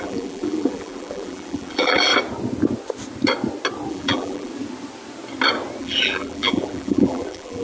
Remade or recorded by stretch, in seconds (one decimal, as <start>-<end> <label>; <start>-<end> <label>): 0.0-2.1 remade; 2.1-3.9 recorded; 3.9-4.5 remade; 4.5-5.8 recorded; 5.8-7.6 remade